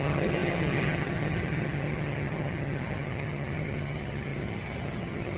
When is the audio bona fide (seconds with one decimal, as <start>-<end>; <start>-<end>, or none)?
none